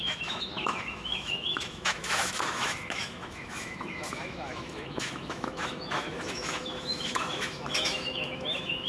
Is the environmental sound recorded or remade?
remade